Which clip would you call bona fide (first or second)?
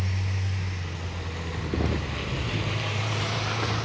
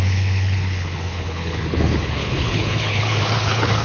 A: first